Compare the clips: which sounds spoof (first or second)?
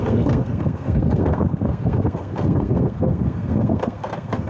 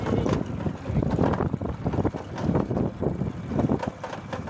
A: first